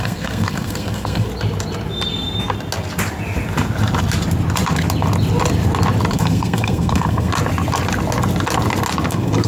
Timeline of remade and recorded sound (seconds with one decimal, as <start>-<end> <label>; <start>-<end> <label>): 0.0-1.3 remade; 1.3-6.1 recorded; 6.1-7.3 remade; 7.3-9.1 recorded; 9.1-9.5 remade